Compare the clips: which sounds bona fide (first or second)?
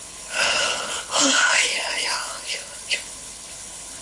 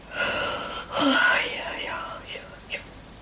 second